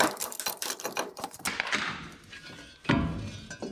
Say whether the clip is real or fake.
real